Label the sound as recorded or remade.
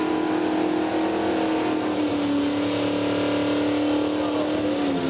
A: recorded